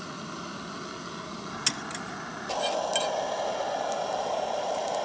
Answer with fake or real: real